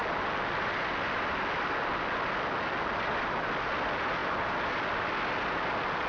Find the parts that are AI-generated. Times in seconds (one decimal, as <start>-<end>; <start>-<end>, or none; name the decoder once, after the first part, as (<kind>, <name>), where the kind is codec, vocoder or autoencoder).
none